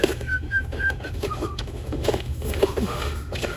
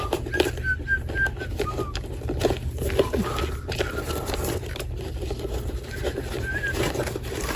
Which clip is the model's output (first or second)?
first